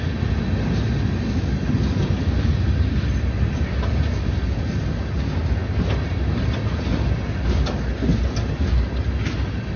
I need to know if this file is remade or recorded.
recorded